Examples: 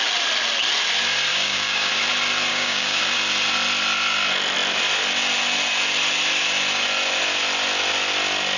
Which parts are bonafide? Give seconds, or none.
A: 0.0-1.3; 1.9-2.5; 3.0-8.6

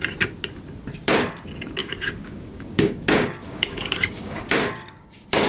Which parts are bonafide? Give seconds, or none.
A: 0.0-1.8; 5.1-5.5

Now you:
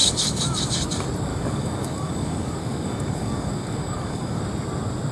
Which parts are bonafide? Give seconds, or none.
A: 0.6-1.3; 4.4-5.1